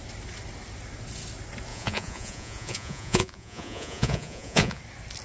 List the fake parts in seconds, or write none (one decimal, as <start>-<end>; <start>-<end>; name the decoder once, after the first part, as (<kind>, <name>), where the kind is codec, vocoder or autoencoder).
1.7-4.8 (vocoder, Vocos)